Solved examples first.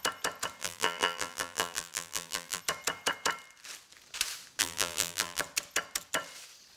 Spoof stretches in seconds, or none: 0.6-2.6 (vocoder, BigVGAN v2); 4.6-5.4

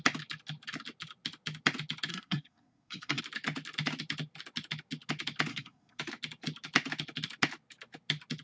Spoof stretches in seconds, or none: 2.1-3.2 (codec, SNAC); 5.5-6.0

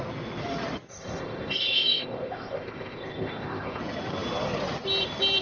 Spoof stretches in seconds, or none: 0.9-3.8 (codec, ZipCodec)

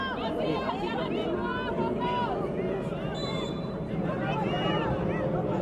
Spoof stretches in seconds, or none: 3.2-4.4 (vocoder, BigVGAN v2)